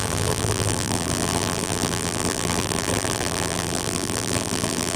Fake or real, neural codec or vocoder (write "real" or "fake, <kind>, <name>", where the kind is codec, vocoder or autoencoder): fake, vocoder, BigVGAN v2